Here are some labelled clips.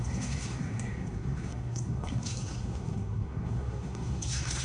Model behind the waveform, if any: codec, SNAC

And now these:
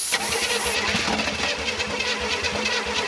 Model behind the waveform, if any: none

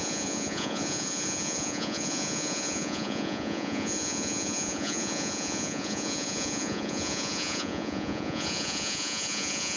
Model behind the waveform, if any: vocoder, Vocos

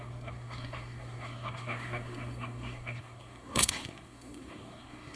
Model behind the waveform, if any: codec, SNAC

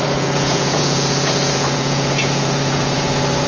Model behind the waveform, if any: vocoder, Vocos